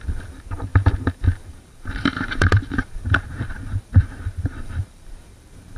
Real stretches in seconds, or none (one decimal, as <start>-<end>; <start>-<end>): none